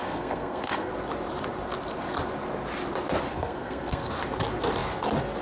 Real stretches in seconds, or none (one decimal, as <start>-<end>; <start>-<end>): 0.9-3.3; 4.1-5.4